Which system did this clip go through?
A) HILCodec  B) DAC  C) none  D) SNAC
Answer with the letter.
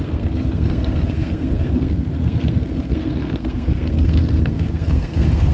D